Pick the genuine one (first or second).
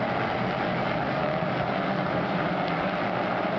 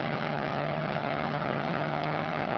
first